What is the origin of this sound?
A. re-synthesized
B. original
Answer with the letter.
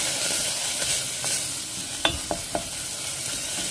B